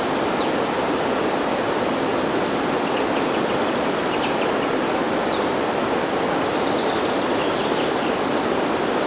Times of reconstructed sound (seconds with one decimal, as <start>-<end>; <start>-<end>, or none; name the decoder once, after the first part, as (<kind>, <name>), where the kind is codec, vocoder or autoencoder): none